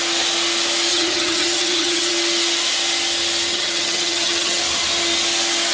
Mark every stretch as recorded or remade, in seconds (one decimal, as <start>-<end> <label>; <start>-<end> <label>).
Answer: 0.0-0.9 recorded; 0.9-2.1 remade; 2.1-3.5 recorded; 3.5-4.6 remade; 4.6-5.7 recorded